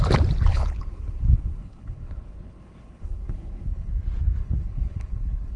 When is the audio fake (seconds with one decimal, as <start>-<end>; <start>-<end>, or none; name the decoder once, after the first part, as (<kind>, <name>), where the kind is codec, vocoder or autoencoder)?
0.5-3.9 (codec, HILCodec); 4.4-5.6